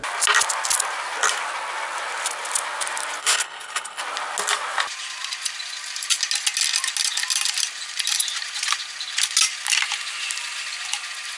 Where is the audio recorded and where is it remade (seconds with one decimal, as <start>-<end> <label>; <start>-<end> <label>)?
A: 0.0-3.2 recorded; 3.2-4.0 remade; 4.0-11.4 recorded